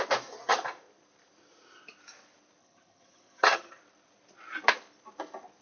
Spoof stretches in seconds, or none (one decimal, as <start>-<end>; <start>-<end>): 2.6-3.8